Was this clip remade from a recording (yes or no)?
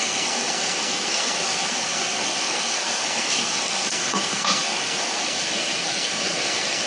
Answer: yes